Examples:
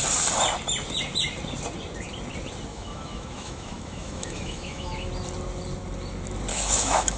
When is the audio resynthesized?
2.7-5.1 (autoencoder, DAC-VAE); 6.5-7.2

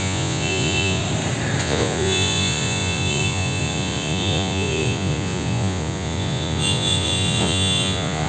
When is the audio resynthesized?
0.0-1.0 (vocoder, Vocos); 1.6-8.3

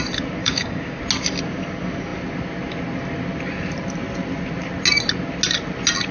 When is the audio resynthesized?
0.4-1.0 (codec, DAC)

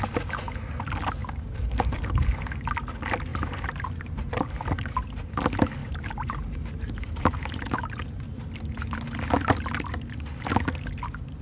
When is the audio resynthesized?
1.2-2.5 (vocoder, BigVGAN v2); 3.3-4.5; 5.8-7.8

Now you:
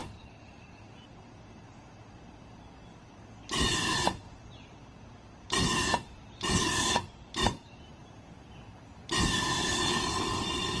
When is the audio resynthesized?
none

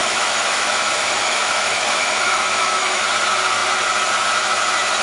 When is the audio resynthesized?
0.0-3.0 (autoencoder, DAC-VAE)